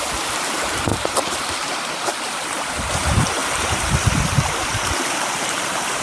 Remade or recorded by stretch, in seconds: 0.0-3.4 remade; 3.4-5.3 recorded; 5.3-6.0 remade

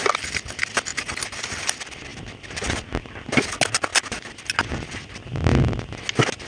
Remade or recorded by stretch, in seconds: 0.0-6.5 recorded

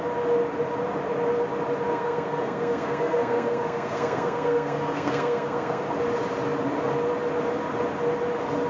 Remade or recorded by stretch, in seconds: 0.0-1.9 recorded; 1.9-5.8 remade; 5.8-8.7 recorded

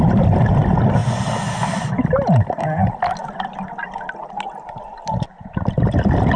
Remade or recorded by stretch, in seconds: 0.0-6.4 recorded